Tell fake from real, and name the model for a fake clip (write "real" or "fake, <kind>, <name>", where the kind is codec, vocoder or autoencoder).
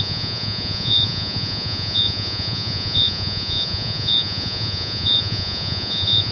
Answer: fake, vocoder, Vocos